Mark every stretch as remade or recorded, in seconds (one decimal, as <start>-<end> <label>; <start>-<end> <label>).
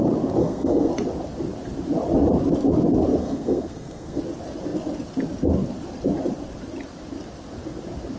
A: 0.0-0.4 recorded; 0.4-0.9 remade; 0.9-3.2 recorded; 3.2-4.2 remade; 4.2-8.2 recorded